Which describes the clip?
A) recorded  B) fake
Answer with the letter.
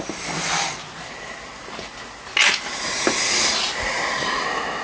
A